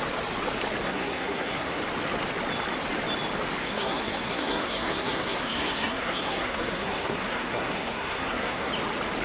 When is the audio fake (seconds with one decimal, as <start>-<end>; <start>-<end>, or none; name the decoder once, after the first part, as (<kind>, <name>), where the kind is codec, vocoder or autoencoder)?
0.8-1.8 (codec, SNAC); 3.6-8.7